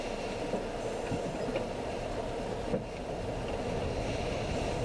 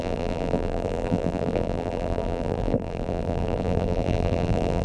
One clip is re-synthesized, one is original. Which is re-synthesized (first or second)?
second